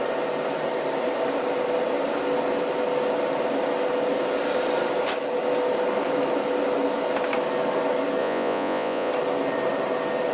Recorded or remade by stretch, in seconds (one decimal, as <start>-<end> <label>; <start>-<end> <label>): 0.0-8.2 recorded; 8.2-9.1 remade; 9.1-10.3 recorded